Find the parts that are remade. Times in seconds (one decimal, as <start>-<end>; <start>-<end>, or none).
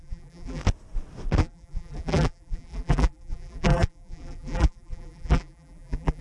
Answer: 0.0-0.6; 1.4-6.2